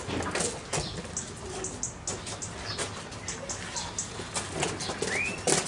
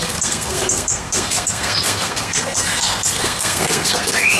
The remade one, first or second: second